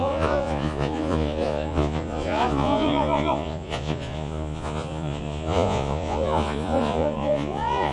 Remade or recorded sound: remade